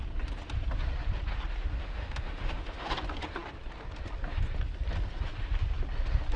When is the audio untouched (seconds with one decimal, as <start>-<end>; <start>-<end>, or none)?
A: 0.0-1.8; 2.9-6.4